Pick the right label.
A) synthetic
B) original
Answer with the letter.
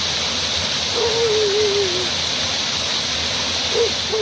B